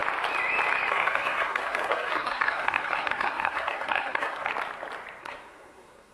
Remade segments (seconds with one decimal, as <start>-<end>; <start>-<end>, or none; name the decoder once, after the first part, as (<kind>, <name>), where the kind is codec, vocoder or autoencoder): 0.9-4.5 (codec, SNAC); 5.2-6.1